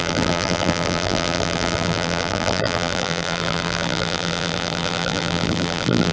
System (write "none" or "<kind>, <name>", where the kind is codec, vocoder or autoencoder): vocoder, BigVGAN v2